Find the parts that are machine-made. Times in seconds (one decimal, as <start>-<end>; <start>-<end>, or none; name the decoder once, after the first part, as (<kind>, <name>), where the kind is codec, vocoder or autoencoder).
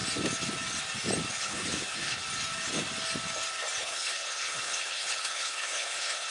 1.3-2.2 (codec, HILCodec); 3.8-6.3